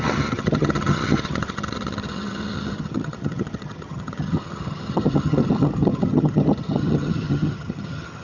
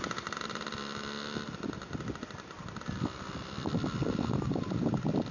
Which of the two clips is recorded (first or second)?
second